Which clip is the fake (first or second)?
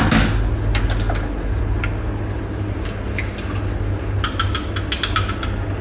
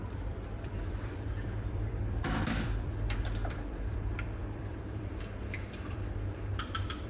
second